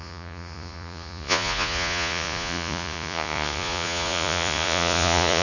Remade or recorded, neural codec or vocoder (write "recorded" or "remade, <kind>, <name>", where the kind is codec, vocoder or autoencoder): remade, vocoder, Vocos